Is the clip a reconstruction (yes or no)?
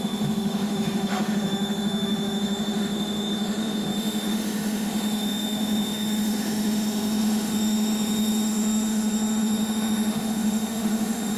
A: yes